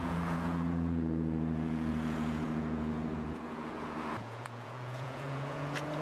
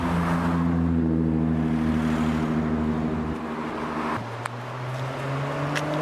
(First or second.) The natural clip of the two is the second